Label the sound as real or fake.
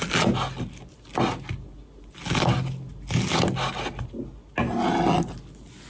real